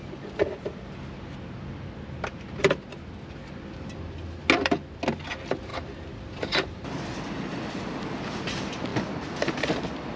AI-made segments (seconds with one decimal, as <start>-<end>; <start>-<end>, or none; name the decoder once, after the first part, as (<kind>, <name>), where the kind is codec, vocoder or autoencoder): 5.7-8.4 (vocoder, BigVGAN v2); 8.9-10.2